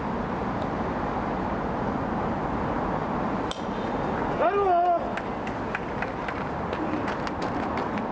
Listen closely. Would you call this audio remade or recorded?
recorded